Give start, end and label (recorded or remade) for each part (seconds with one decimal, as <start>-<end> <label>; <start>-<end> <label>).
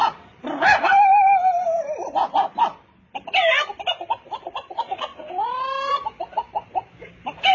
0.0-2.2 remade; 2.2-3.9 recorded; 3.9-5.1 remade; 5.1-7.1 recorded; 7.1-7.5 remade